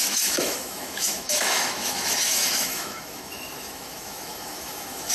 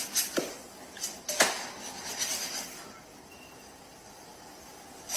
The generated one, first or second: first